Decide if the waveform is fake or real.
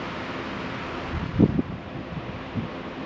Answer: fake